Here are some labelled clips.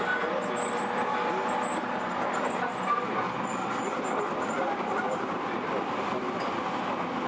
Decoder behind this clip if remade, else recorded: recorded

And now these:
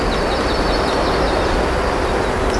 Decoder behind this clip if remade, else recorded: recorded